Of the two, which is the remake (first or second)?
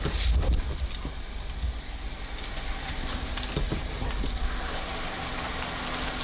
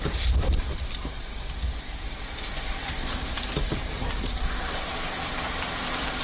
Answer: second